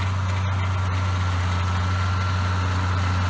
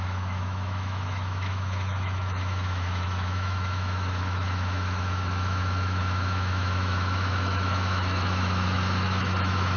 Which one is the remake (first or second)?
second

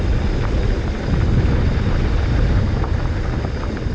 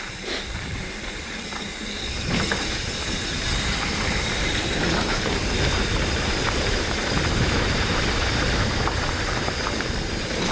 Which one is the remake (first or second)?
second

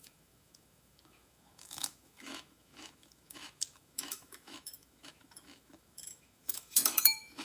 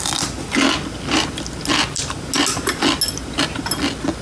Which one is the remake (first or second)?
first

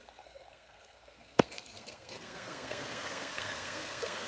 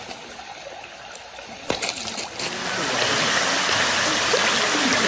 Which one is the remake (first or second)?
first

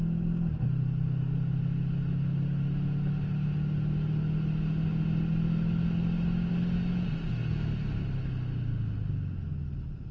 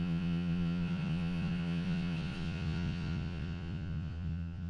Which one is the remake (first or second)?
second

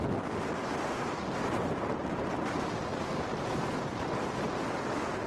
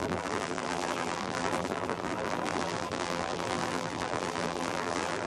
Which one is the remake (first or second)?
second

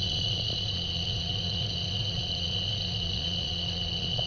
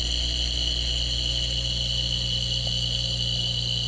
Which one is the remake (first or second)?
first